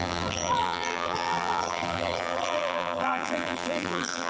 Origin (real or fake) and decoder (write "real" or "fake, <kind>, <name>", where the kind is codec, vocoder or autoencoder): fake, vocoder, BigVGAN v2